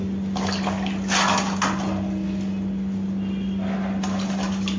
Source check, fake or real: real